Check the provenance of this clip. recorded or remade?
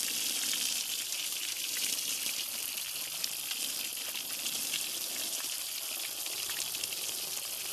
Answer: recorded